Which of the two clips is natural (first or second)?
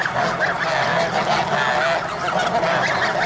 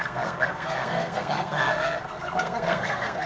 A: first